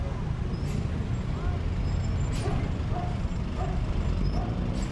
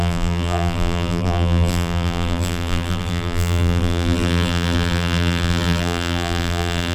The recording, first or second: first